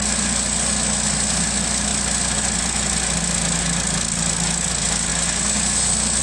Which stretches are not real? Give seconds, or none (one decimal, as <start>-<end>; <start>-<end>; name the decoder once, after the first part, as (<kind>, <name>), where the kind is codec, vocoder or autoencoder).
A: none